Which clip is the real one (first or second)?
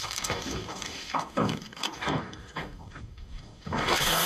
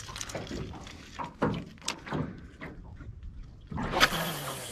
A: second